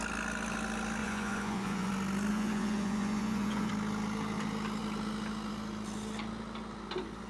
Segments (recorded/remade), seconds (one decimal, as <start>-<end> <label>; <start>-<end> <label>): 0.0-1.0 recorded; 1.0-1.9 remade; 1.9-2.3 recorded; 2.3-3.7 remade; 3.7-7.3 recorded

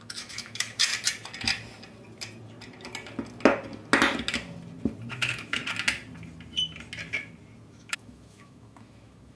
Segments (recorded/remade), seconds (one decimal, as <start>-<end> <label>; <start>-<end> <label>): 0.0-0.9 remade; 0.9-5.1 recorded; 5.1-5.6 remade; 5.6-7.7 recorded; 7.7-9.4 remade

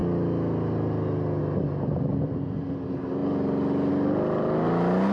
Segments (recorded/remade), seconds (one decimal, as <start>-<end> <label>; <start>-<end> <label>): 0.0-5.1 recorded

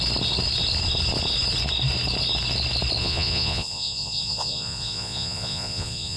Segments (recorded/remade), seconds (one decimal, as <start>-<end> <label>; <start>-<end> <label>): 0.0-3.0 recorded; 3.0-6.2 remade

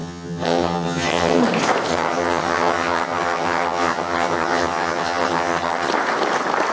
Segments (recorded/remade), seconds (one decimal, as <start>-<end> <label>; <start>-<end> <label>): 0.0-1.4 remade; 1.4-1.9 recorded; 1.9-5.9 remade; 5.9-6.7 recorded

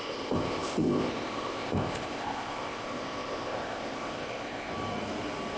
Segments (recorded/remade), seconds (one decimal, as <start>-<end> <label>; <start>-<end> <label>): 0.0-4.7 remade; 4.7-5.6 recorded

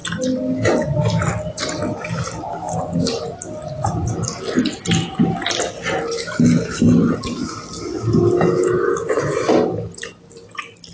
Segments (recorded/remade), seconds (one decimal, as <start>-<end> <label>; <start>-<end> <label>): 0.0-4.4 recorded; 4.4-10.9 remade